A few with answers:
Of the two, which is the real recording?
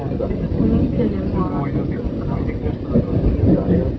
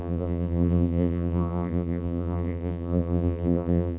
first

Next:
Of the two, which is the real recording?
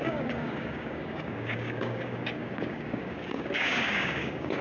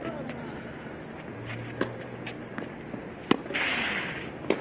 second